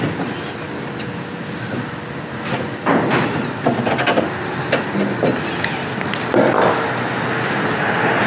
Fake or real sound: real